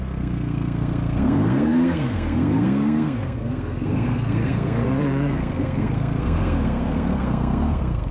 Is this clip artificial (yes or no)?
yes